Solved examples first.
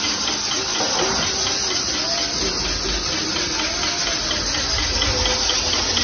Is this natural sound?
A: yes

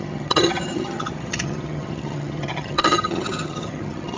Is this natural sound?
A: no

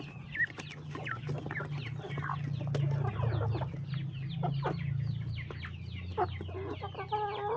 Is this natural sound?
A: yes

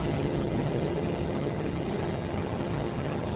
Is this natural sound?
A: no